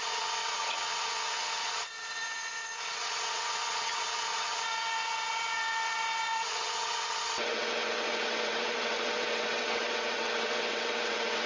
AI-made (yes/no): yes